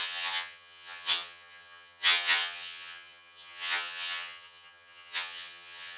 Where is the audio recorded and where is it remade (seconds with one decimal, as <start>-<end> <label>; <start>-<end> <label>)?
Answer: 0.0-6.0 remade